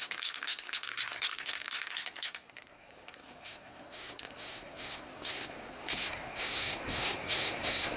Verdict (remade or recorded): remade